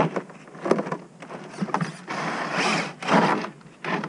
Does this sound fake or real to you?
real